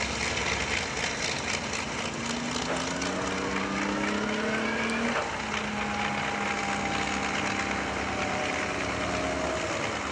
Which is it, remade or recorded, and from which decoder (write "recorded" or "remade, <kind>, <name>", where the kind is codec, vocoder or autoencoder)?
recorded